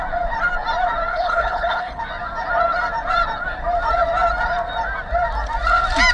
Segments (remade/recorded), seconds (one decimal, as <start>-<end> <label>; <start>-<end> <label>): 0.0-1.1 recorded; 1.1-2.0 remade; 2.0-6.1 recorded